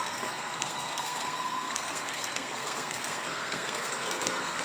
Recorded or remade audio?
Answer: remade